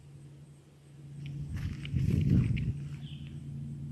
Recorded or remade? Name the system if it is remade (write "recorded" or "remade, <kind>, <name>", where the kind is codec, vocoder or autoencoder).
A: recorded